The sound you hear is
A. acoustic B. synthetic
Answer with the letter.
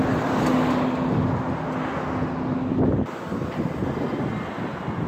A